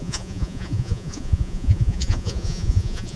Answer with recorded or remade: remade